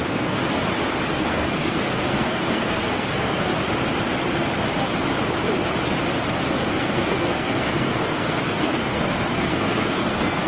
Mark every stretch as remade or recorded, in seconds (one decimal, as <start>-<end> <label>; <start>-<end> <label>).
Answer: 0.0-0.4 remade; 0.4-1.1 recorded; 1.1-3.5 remade; 3.5-6.7 recorded; 6.7-10.5 remade